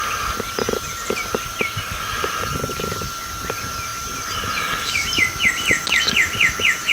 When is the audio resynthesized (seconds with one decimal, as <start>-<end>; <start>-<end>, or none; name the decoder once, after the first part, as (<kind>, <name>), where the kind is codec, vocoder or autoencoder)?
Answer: none